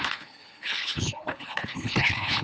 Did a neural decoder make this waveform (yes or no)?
yes